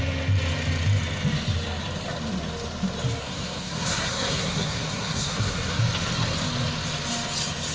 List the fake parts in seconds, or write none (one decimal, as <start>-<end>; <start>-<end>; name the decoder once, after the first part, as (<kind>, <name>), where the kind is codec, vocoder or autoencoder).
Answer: 3.2-5.8 (codec, SNAC)